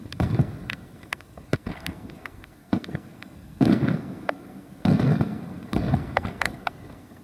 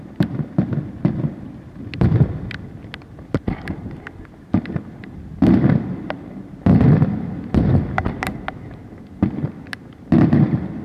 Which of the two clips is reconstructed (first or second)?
first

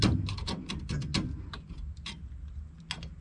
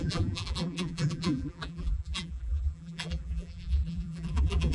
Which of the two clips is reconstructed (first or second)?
second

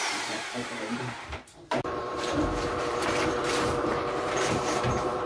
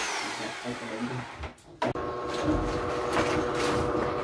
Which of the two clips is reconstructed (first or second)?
first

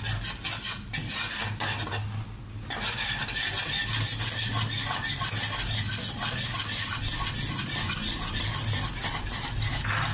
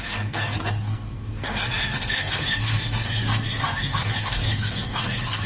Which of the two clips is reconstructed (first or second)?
second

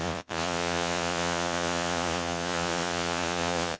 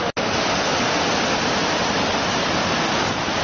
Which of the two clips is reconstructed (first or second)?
first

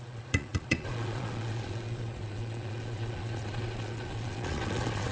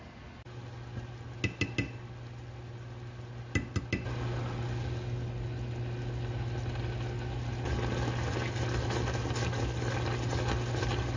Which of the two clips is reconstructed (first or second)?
first